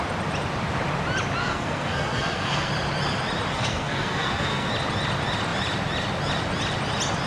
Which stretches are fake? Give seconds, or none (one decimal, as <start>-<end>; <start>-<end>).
1.4-2.7; 3.5-4.7